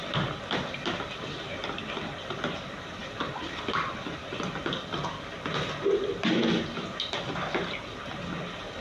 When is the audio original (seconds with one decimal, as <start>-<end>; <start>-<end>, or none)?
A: 0.0-3.0; 4.5-8.8

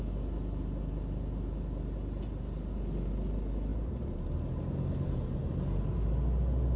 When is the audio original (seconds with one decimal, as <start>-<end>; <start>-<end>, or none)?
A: 0.0-6.8

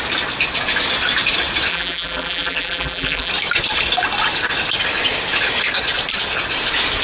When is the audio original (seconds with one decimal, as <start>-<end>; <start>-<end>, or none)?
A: 0.0-1.7; 3.3-7.0

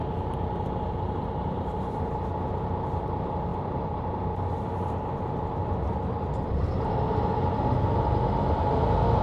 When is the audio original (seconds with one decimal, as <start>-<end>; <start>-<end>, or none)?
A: 2.0-3.5; 5.7-9.2

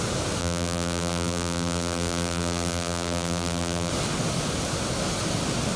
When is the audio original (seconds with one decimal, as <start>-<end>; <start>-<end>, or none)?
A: 0.0-0.4; 3.9-5.8

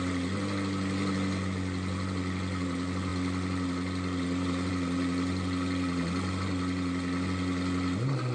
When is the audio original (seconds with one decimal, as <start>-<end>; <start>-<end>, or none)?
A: 0.0-8.3

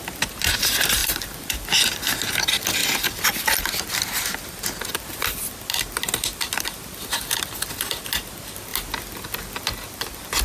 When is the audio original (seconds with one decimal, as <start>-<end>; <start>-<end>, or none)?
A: 0.0-1.0; 1.7-2.8; 3.6-10.4

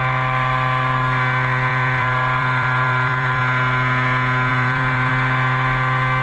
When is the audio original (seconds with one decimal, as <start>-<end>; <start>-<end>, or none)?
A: 0.0-1.7; 3.4-4.5; 5.1-6.2